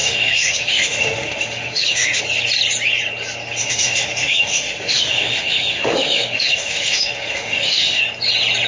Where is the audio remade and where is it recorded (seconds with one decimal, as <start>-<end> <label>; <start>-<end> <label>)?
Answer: 0.0-2.2 remade; 2.2-3.6 recorded; 3.6-8.0 remade; 8.0-8.7 recorded